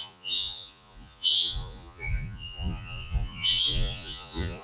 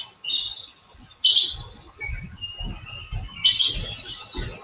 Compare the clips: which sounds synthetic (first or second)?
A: first